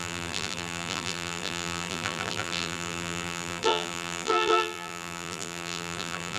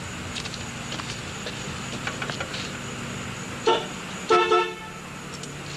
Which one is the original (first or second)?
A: second